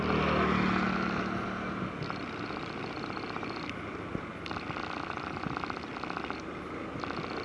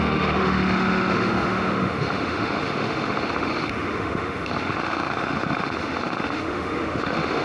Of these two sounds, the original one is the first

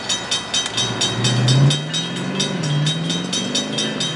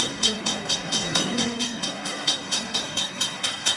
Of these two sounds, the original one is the first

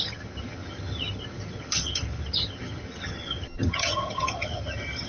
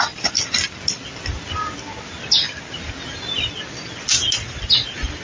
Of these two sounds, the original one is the second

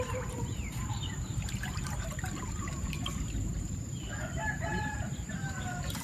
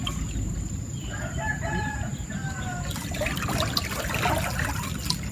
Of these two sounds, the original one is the second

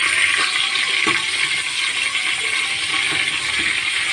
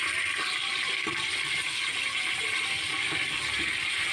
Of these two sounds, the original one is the first